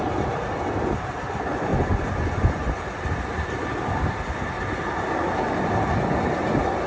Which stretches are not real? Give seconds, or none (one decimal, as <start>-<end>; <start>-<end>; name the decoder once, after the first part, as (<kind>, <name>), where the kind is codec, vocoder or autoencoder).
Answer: 1.7-2.7 (vocoder, Vocos)